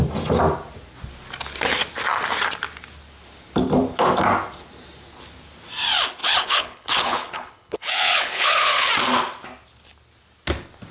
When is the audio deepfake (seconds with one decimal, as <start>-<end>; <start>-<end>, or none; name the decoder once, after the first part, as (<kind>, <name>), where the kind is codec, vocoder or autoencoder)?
6.2-8.9 (codec, HILCodec)